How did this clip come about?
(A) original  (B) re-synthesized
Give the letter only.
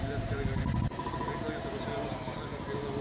A